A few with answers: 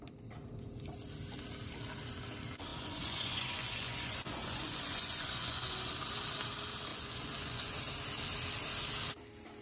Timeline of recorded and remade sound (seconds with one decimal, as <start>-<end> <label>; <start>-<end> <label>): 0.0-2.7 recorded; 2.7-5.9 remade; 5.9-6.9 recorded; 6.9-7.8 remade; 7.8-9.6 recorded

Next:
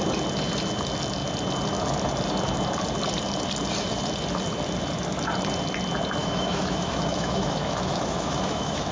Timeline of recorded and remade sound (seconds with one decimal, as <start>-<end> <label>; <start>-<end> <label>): 0.0-6.2 recorded; 6.2-8.9 remade

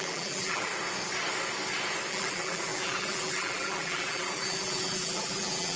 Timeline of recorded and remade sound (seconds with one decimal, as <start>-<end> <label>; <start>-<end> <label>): 0.0-0.7 remade; 0.7-2.1 recorded; 2.1-5.8 remade